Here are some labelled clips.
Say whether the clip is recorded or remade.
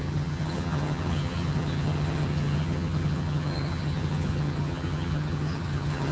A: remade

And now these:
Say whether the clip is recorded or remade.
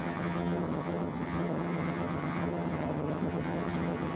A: remade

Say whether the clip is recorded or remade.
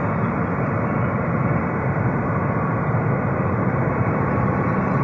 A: recorded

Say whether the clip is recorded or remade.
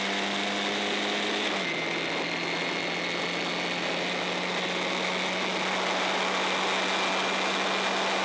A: recorded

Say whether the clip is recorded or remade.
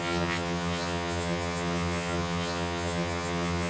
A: remade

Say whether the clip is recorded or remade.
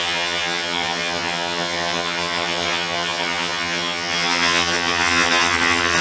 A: remade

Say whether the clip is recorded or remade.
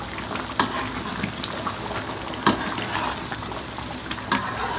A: recorded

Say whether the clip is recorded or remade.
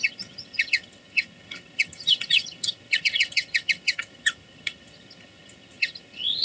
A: remade